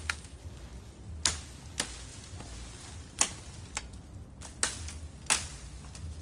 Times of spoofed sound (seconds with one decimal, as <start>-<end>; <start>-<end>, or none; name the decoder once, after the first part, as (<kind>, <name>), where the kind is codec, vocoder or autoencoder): 2.1-3.8 (vocoder, BigVGAN v2)

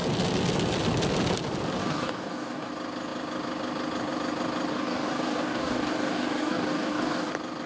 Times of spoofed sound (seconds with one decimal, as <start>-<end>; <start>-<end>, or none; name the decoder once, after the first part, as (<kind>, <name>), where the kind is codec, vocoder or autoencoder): 1.8-2.7 (codec, DAC); 4.7-7.3

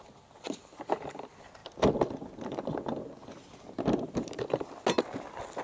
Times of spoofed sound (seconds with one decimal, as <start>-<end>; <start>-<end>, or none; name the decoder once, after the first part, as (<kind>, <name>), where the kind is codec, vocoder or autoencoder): none

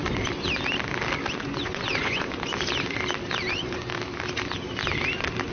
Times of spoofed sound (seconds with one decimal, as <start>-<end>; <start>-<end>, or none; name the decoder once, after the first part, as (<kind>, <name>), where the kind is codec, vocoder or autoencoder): 1.4-2.5 (vocoder, Vocos); 3.5-3.9

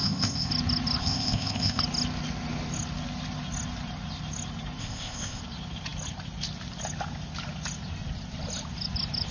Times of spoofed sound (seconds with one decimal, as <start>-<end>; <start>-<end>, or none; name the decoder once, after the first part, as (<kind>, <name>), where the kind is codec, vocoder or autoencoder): 0.0-0.5 (codec, ZipCodec); 1.0-1.8; 4.8-5.4

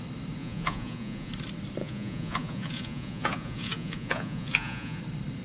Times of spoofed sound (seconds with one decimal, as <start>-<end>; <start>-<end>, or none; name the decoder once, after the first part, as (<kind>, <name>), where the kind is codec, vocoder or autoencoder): 0.4-1.3 (vocoder, Vocos); 1.8-5.0

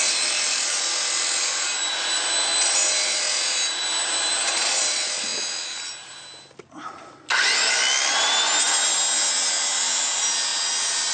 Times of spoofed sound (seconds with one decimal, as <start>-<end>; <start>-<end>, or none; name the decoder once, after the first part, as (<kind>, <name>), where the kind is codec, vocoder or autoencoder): 0.0-2.5 (vocoder, BigVGAN v2); 3.2-5.3; 9.5-11.1

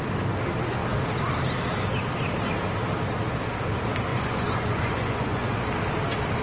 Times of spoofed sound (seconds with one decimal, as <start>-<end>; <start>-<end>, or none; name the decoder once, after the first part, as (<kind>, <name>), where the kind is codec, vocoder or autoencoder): 4.1-5.7 (vocoder, Vocos)